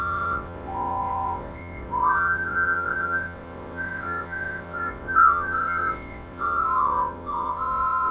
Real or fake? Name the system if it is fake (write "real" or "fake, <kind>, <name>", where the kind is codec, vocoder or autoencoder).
fake, vocoder, WaveNeXt